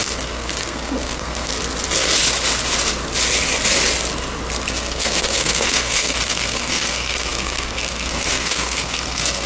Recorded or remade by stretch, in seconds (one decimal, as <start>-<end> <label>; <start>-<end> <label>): 0.0-1.5 remade; 1.5-4.7 recorded; 4.7-9.5 remade